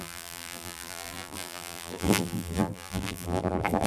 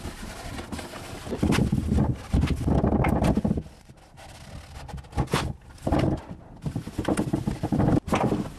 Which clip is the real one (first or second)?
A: second